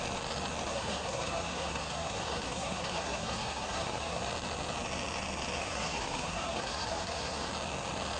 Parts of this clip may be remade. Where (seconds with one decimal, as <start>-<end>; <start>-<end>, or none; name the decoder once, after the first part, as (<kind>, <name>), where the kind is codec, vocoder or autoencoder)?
0.7-4.2 (codec, SNAC); 5.6-7.5